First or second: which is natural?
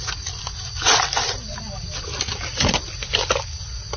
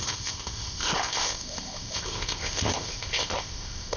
first